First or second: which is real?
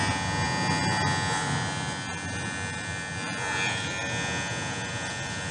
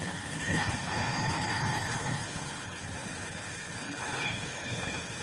first